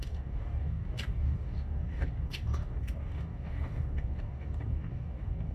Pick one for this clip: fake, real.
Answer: fake